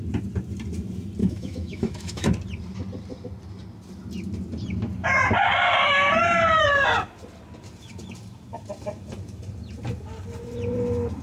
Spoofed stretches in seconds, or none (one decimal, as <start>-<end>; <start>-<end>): 1.2-2.3